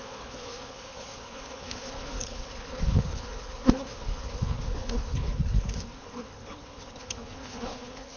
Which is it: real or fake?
fake